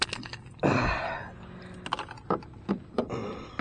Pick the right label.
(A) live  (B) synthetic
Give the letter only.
A